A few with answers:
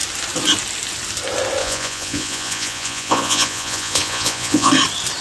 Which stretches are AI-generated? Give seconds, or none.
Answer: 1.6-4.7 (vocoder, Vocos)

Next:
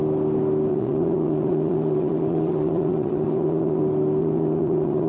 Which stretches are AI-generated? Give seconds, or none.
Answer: 0.7-3.8 (vocoder, Vocos); 4.2-5.1

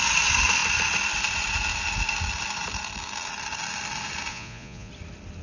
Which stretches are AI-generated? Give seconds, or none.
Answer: 4.3-4.9 (vocoder, Vocos)

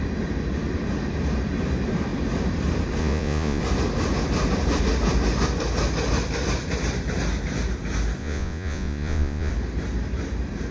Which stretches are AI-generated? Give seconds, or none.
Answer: 3.0-3.6 (vocoder, Vocos); 8.2-9.5

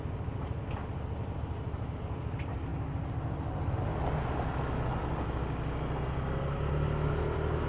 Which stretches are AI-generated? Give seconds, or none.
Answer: none